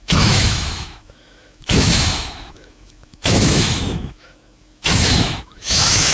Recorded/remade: remade